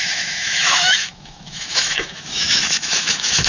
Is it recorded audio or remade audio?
remade